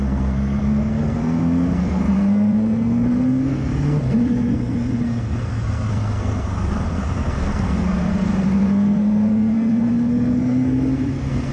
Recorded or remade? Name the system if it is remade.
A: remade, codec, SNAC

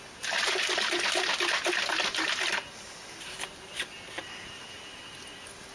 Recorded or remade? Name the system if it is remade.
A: recorded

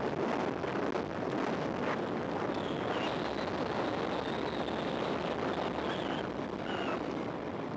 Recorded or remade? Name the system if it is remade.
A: recorded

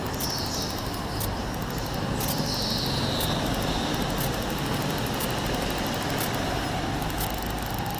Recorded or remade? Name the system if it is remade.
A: recorded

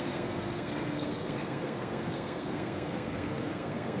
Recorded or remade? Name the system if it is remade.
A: remade, codec, SNAC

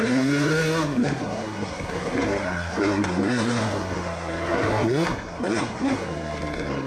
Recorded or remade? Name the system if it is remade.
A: remade, codec, SNAC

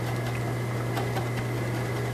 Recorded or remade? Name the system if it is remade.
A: recorded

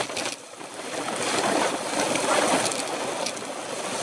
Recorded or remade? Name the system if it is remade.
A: recorded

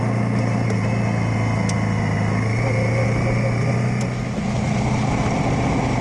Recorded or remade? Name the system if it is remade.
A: recorded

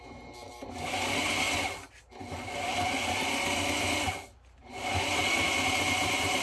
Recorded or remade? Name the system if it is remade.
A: recorded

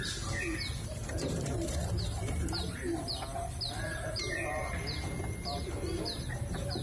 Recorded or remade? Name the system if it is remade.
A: recorded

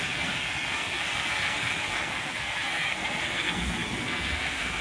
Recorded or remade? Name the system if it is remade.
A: remade, codec, SNAC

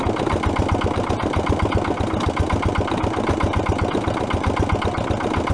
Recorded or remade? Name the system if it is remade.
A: recorded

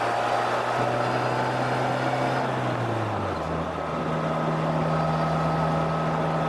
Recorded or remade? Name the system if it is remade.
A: recorded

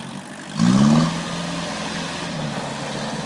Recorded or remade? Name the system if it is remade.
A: recorded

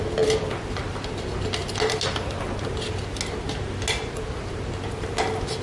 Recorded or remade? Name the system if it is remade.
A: recorded